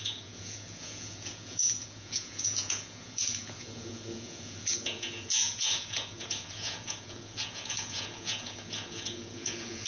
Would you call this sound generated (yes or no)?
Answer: yes